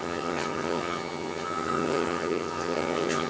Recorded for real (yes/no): no